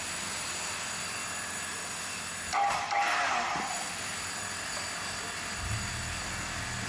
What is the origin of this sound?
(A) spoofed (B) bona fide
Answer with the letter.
B